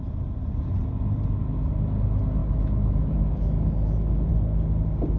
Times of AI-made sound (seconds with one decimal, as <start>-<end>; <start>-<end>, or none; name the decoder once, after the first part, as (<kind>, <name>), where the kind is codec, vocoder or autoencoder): 2.4-4.3 (autoencoder, DAC-VAE)